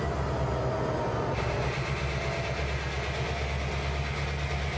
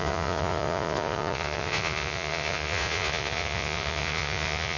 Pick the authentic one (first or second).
first